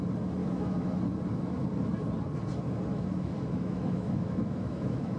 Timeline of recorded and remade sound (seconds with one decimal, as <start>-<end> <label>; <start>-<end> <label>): 0.0-0.4 recorded; 0.4-1.0 remade; 1.0-2.9 recorded; 2.9-5.2 remade